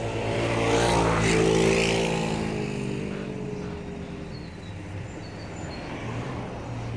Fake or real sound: real